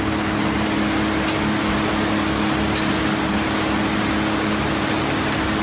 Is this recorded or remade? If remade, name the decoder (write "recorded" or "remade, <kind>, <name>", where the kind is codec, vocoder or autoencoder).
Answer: recorded